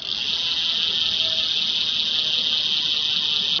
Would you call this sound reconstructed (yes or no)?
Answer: no